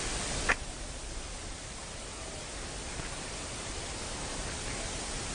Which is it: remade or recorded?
recorded